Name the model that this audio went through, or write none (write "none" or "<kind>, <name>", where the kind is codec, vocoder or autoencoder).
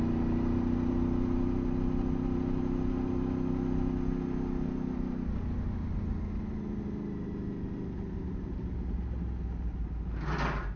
none